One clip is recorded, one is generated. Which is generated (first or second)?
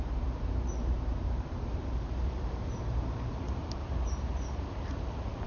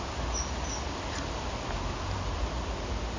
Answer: first